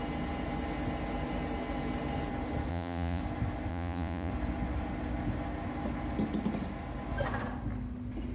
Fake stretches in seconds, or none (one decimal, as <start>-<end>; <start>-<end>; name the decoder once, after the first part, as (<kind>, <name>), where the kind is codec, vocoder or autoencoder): 2.7-3.2 (vocoder, Vocos); 3.7-4.3

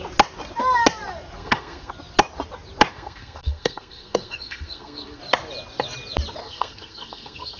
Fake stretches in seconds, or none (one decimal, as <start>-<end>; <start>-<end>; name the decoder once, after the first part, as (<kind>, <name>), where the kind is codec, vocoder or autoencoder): 1.4-1.9 (codec, SNAC); 2.9-5.2; 6.4-7.6

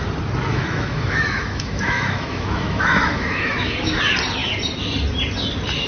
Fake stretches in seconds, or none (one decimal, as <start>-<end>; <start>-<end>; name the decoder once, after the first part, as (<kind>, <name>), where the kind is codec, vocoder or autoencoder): 0.5-4.0 (autoencoder, DAC-VAE)

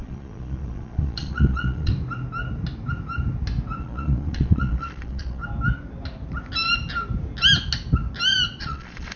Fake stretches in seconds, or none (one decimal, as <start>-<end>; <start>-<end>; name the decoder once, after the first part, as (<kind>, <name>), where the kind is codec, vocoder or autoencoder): 0.0-1.9 (vocoder, Vocos); 3.8-5.4; 8.6-9.2

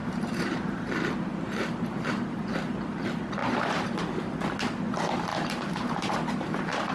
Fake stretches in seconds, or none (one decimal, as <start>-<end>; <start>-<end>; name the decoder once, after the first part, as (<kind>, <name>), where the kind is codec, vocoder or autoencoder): 0.0-0.7 (vocoder, BigVGAN v2); 1.3-2.8; 3.4-4.0; 5.3-6.9

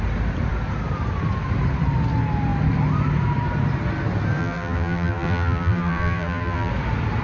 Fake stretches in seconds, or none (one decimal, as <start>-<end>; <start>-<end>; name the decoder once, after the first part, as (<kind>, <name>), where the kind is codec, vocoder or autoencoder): 4.4-6.7 (vocoder, BigVGAN v2)